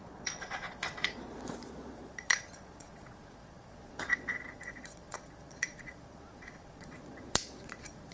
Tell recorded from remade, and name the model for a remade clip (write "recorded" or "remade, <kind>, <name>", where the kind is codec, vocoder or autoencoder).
remade, vocoder, Vocos